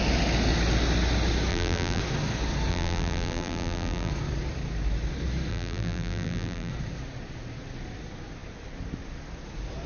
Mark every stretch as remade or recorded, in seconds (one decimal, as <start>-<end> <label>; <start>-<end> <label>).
0.0-1.5 recorded; 1.5-2.0 remade; 2.0-2.7 recorded; 2.7-4.1 remade; 4.1-5.5 recorded; 5.5-6.7 remade; 6.7-9.9 recorded